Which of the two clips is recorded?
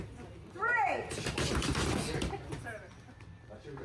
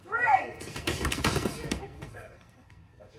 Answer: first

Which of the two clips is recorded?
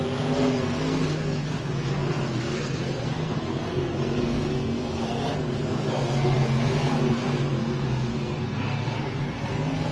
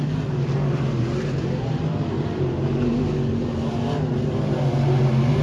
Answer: second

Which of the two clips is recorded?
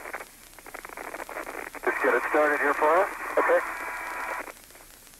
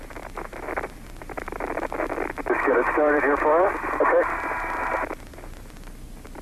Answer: first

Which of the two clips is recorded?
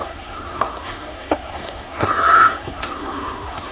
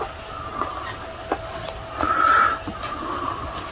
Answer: second